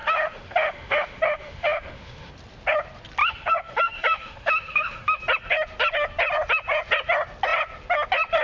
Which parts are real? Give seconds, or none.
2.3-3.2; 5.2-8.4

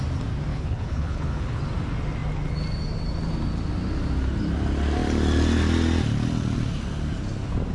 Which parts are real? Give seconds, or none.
0.0-0.5; 1.6-7.7

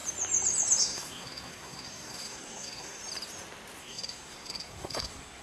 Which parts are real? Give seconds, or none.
0.0-0.8; 3.0-3.8

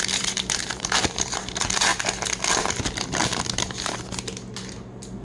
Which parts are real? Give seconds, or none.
1.9-5.2

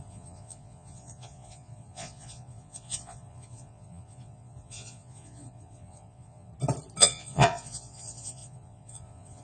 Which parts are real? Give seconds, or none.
6.5-7.0

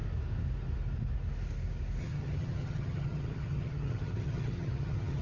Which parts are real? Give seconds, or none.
0.0-2.0

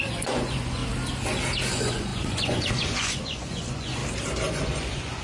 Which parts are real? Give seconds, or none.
0.8-1.7; 4.0-4.5